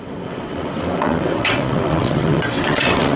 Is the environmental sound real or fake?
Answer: fake